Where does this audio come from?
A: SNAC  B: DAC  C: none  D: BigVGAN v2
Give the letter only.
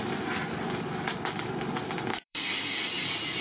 D